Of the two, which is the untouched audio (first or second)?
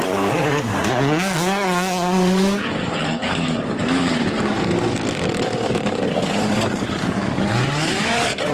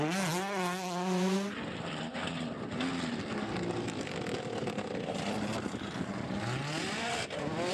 second